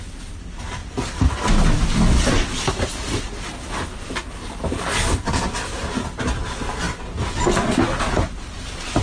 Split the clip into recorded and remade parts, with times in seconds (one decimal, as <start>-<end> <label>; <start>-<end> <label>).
0.0-0.8 remade; 0.8-2.7 recorded; 2.7-6.4 remade; 6.4-9.0 recorded